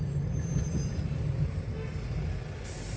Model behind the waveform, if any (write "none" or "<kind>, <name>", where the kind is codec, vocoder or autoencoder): none